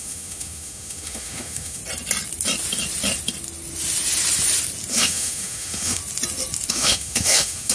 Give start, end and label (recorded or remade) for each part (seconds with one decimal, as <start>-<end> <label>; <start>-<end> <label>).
0.0-1.8 remade; 1.8-4.9 recorded; 4.9-6.0 remade; 6.0-6.7 recorded; 6.7-7.7 remade